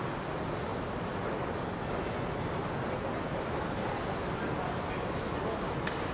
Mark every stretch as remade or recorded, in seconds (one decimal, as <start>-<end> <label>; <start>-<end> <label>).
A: 0.0-6.1 recorded